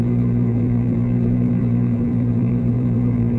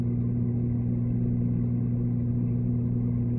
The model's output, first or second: first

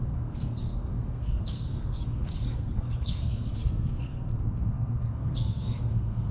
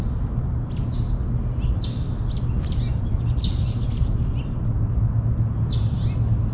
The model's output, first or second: first